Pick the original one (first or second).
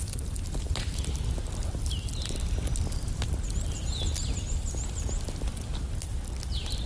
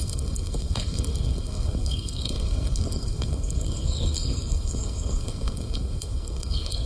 first